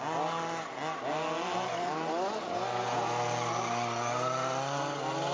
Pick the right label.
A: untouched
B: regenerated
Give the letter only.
A